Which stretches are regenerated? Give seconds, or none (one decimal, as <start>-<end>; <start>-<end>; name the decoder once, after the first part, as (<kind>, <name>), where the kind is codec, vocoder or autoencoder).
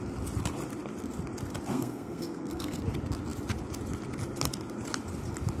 1.7-2.8 (codec, SNAC)